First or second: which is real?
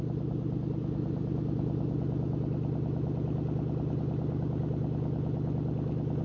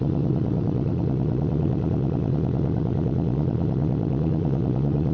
first